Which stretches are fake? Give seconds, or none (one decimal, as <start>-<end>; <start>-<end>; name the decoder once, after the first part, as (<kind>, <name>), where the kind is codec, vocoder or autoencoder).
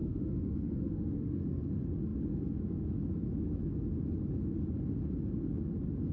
0.0-1.6 (autoencoder, DAC-VAE)